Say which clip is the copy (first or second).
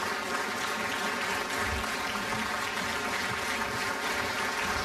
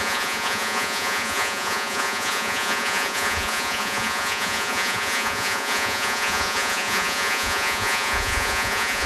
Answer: second